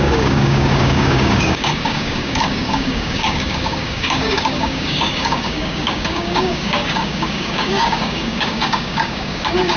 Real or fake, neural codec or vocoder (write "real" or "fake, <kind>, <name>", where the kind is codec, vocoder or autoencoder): fake, codec, DAC